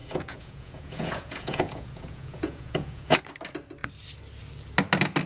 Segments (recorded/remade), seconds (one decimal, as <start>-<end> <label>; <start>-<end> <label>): 0.0-3.2 remade; 3.2-5.3 recorded